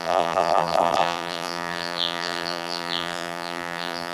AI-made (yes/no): yes